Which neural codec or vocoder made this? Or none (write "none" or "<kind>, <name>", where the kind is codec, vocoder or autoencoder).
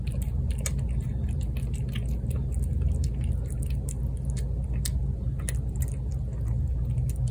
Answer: none